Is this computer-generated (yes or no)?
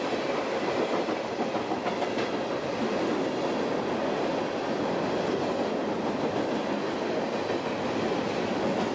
no